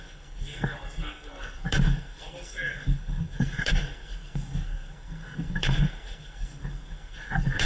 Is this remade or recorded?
remade